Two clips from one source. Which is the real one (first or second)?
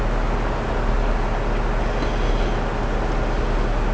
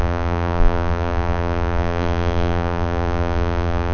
first